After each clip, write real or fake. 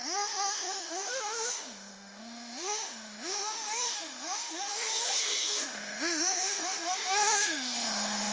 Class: fake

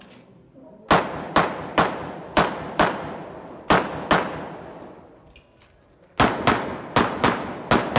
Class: real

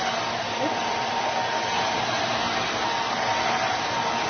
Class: real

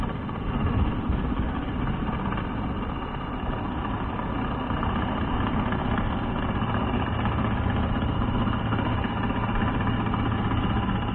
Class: real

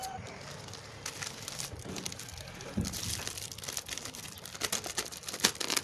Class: real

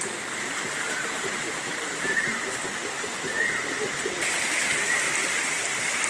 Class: real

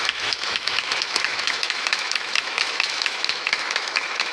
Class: fake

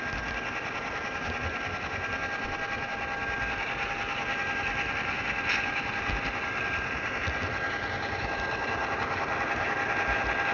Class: real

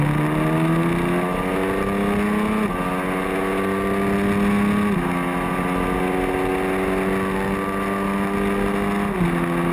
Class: real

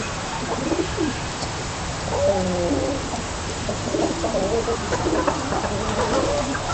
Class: real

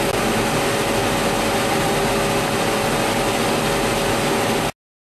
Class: real